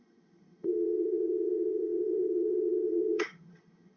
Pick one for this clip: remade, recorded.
remade